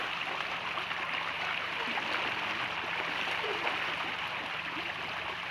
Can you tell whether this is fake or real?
real